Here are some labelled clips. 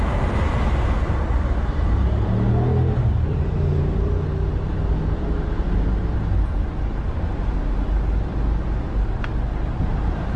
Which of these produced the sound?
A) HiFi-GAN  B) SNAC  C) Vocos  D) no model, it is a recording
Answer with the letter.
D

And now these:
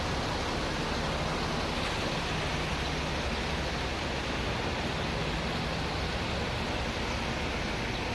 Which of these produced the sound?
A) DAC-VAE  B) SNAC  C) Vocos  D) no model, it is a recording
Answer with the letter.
D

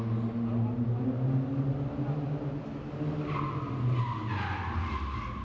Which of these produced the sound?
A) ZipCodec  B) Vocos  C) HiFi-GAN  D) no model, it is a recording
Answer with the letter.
D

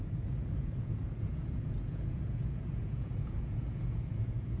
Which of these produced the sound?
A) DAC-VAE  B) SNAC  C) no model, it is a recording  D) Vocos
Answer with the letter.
D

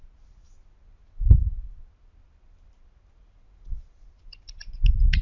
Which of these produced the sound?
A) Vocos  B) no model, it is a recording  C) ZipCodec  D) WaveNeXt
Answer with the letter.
B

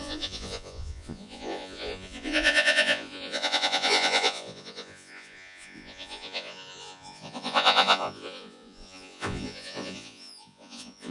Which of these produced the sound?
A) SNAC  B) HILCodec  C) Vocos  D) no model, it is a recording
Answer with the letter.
C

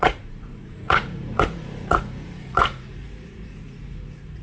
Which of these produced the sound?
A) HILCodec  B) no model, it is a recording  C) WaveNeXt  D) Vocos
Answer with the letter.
D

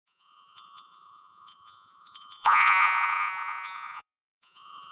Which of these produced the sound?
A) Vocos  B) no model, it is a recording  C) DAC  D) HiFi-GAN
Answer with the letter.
A